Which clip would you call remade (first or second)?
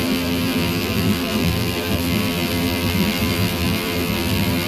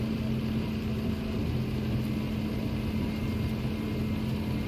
first